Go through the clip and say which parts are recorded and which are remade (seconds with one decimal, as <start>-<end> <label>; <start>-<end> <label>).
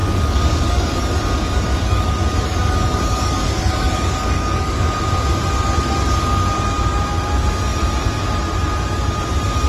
0.0-5.0 remade; 5.0-9.7 recorded